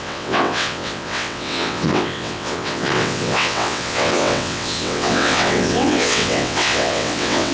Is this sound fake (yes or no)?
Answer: yes